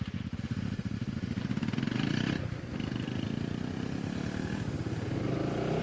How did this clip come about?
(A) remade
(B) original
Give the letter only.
B